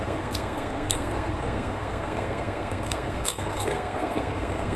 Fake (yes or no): yes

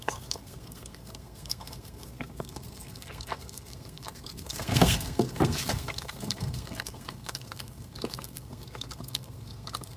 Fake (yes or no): yes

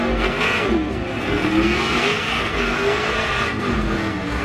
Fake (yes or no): yes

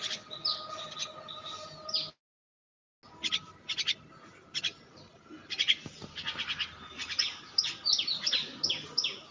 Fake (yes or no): no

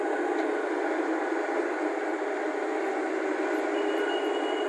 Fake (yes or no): no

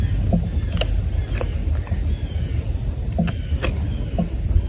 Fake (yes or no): no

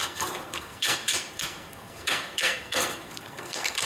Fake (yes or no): yes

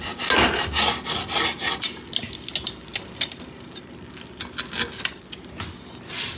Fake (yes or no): no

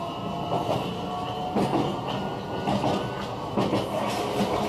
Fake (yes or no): no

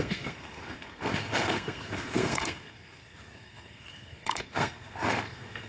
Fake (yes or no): yes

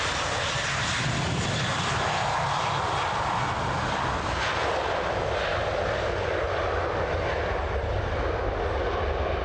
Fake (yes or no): no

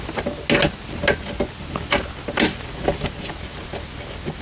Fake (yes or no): no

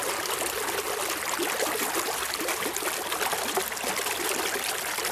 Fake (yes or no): no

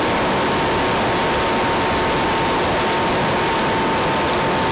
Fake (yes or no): no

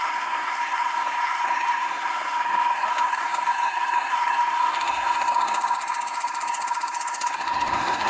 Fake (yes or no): yes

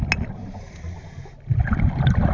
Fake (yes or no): no